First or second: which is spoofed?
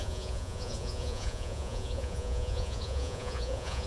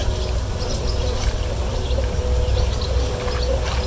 first